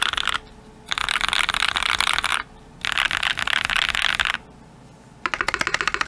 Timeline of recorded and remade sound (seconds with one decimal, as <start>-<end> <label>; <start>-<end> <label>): 0.0-6.1 recorded